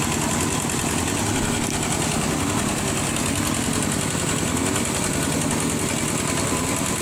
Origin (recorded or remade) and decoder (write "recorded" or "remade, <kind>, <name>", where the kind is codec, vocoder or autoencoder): recorded